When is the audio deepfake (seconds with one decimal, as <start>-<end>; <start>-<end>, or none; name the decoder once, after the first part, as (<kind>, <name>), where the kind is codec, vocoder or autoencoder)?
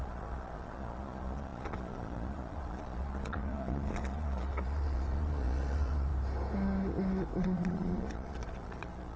0.0-6.1 (vocoder, Vocos); 7.4-9.2